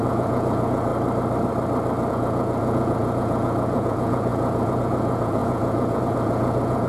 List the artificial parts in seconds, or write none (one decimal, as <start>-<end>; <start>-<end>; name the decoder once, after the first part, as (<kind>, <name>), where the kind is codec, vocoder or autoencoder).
0.0-0.9 (vocoder, Vocos); 2.1-6.9